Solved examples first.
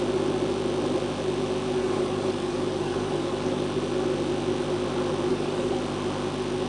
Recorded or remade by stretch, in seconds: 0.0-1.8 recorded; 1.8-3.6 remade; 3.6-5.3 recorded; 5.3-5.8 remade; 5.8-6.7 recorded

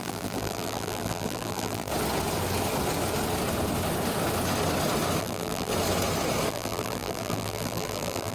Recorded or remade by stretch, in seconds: 0.0-1.9 remade; 1.9-5.2 recorded; 5.2-5.7 remade; 5.7-6.5 recorded; 6.5-8.3 remade

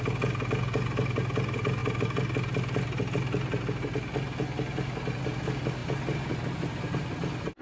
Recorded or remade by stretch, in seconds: 0.0-7.6 recorded

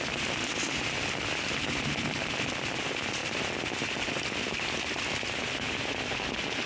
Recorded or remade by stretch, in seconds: 0.0-6.7 recorded

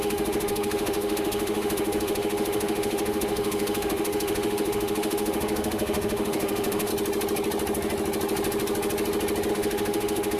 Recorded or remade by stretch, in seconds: 0.0-6.9 remade; 6.9-9.5 recorded; 9.5-10.4 remade

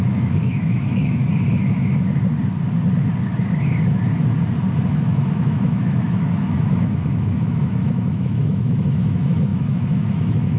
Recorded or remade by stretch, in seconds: 0.0-1.2 remade; 1.2-4.9 recorded; 4.9-10.6 remade